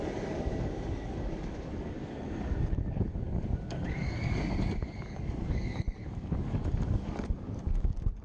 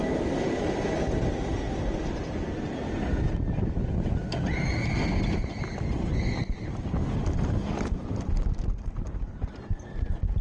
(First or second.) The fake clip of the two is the first